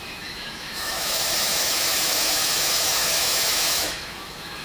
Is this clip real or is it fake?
fake